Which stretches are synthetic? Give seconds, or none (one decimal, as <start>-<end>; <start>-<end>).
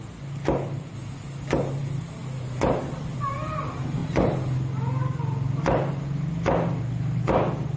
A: none